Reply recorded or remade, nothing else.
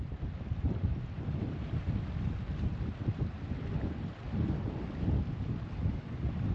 recorded